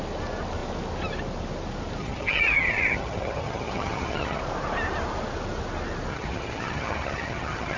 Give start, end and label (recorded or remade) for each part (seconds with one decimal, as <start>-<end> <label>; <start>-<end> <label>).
0.0-2.0 recorded; 2.0-4.4 remade; 4.4-6.1 recorded; 6.1-7.8 remade